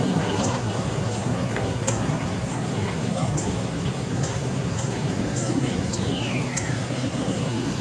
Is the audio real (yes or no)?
no